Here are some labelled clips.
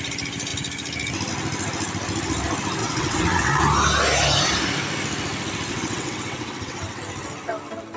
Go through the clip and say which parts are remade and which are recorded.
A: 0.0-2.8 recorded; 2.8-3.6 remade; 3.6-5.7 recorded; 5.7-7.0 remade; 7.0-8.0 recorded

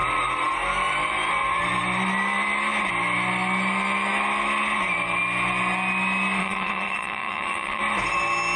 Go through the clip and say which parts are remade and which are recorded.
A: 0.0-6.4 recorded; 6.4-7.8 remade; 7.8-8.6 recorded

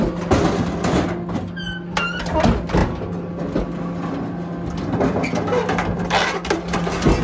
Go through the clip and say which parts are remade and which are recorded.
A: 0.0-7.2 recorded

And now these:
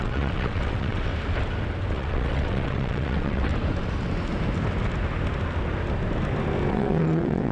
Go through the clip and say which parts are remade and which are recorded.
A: 0.0-1.1 remade; 1.1-1.9 recorded; 1.9-3.5 remade; 3.5-6.7 recorded; 6.7-7.5 remade

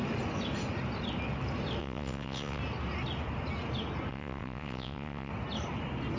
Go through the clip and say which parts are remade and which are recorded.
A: 0.0-1.8 recorded; 1.8-2.6 remade; 2.6-4.1 recorded; 4.1-5.3 remade; 5.3-6.2 recorded